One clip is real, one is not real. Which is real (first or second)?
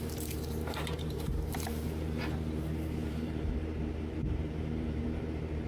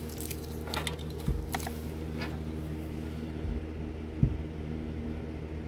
second